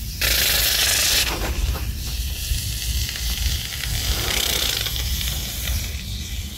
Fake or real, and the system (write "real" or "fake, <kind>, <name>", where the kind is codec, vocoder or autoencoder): fake, vocoder, BigVGAN v2